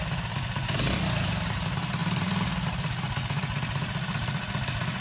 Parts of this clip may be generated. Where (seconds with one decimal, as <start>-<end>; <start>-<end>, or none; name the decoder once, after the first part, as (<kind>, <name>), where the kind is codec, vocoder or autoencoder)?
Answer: 2.0-5.0 (vocoder, BigVGAN v2)